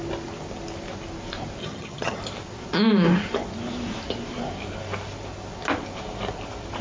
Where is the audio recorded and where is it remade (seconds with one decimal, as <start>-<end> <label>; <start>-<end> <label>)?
0.0-1.6 recorded; 1.6-2.2 remade; 2.2-6.8 recorded

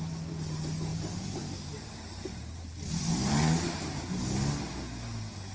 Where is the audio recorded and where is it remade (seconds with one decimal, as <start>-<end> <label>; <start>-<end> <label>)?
0.0-0.9 recorded; 0.9-4.2 remade; 4.2-5.5 recorded

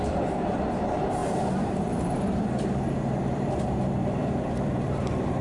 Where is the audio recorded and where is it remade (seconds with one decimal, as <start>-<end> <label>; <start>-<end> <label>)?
0.0-5.4 remade

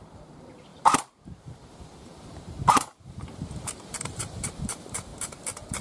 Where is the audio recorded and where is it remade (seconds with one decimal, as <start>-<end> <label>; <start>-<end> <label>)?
0.0-5.1 remade; 5.1-5.8 recorded